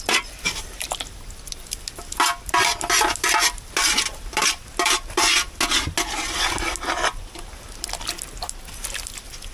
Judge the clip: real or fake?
real